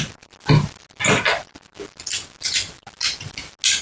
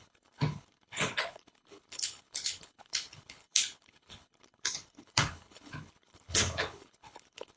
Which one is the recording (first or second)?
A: first